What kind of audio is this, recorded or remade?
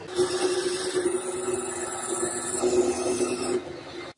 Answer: recorded